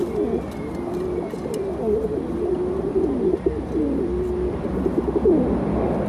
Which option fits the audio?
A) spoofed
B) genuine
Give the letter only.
B